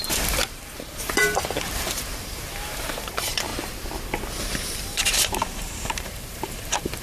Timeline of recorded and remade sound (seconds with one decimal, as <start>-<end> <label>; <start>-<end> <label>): 0.0-3.5 remade; 3.5-4.4 recorded; 4.4-7.0 remade